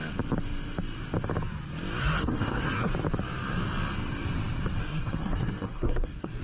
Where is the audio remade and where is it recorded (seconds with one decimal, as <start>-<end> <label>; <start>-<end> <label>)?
0.0-2.0 recorded; 2.0-2.9 remade; 2.9-4.8 recorded; 4.8-6.4 remade